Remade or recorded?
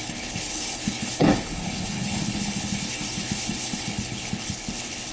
remade